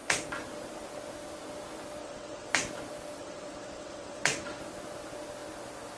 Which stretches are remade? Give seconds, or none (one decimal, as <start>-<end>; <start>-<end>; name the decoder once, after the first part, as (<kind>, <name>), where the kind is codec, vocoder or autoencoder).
2.0-2.5 (vocoder, WaveNeXt); 3.2-4.6